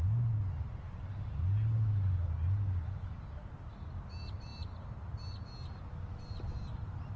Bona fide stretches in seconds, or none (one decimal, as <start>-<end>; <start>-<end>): 0.0-4.5; 5.1-7.2